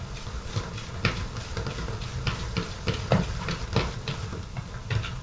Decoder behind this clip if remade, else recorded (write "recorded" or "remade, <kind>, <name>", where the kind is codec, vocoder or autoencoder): recorded